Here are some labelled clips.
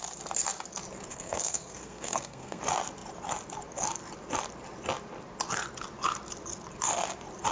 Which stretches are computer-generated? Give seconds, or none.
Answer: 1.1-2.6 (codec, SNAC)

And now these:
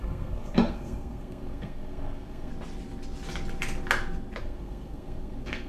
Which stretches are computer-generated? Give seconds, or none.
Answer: 0.0-2.5 (codec, SNAC); 4.4-5.7

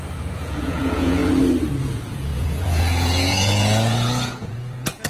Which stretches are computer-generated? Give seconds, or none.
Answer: 0.0-1.2 (vocoder, Vocos); 1.8-5.1